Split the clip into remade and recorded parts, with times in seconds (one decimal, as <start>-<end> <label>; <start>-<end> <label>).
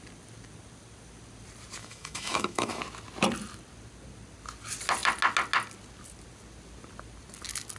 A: 0.0-1.8 recorded; 1.8-2.8 remade; 2.8-7.8 recorded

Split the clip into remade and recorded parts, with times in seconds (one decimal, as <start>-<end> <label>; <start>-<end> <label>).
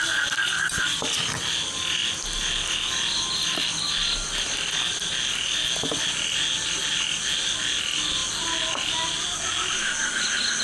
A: 0.0-10.6 recorded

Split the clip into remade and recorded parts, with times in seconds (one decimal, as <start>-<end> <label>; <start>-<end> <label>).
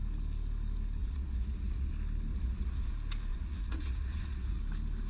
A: 0.0-1.0 recorded; 1.0-1.9 remade; 1.9-2.3 recorded; 2.3-2.9 remade; 2.9-3.3 recorded; 3.3-4.6 remade; 4.6-5.1 recorded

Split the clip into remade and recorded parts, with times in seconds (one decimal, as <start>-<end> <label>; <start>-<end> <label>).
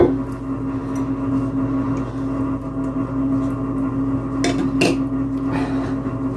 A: 0.0-6.4 recorded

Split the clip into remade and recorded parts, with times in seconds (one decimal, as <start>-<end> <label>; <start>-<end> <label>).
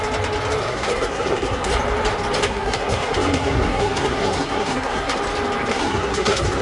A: 0.0-0.6 recorded; 0.6-1.7 remade; 1.7-2.4 recorded; 2.4-5.2 remade; 5.2-5.7 recorded; 5.7-6.6 remade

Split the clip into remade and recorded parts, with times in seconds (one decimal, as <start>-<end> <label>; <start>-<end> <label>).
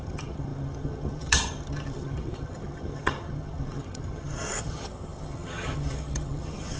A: 0.0-6.8 remade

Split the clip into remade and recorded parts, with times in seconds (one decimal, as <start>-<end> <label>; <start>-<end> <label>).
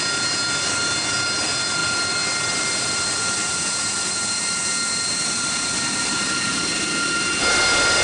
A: 0.0-8.0 recorded